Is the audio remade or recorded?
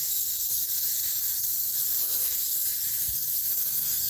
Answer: remade